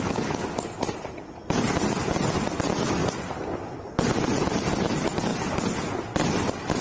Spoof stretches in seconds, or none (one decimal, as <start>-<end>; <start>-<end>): none